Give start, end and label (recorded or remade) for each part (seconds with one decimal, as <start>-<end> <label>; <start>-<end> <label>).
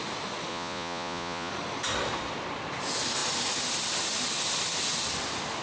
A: 0.0-0.5 recorded; 0.5-1.5 remade; 1.5-5.6 recorded